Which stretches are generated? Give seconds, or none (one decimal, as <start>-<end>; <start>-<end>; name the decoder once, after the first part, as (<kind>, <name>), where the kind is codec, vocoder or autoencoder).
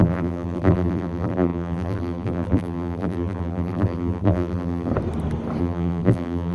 0.0-4.9 (vocoder, BigVGAN v2); 5.6-6.5